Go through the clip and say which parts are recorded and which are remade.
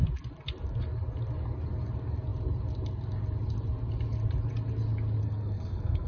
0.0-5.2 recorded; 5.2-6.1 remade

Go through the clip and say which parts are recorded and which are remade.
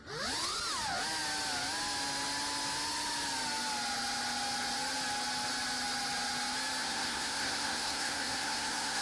0.0-6.8 recorded; 6.8-9.0 remade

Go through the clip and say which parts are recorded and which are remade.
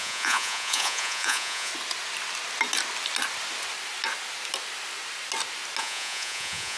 0.0-1.7 remade; 1.7-5.8 recorded; 5.8-6.8 remade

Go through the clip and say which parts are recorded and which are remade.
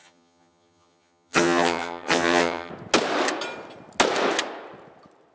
0.0-2.7 remade; 2.7-5.3 recorded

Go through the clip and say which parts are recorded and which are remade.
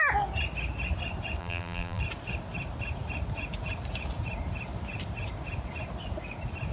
0.0-1.4 recorded; 1.4-2.0 remade; 2.0-6.7 recorded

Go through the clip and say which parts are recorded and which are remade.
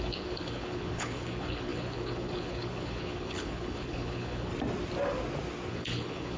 0.0-4.5 remade; 4.5-5.7 recorded; 5.7-6.4 remade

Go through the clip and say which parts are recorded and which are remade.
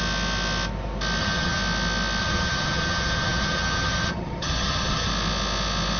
0.0-1.2 recorded; 1.2-1.6 remade; 1.6-2.2 recorded; 2.2-5.1 remade; 5.1-6.0 recorded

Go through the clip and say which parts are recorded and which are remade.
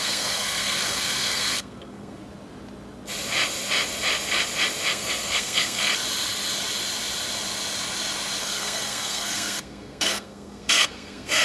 0.0-2.2 remade; 2.2-4.9 recorded; 4.9-5.9 remade; 5.9-8.4 recorded; 8.4-11.4 remade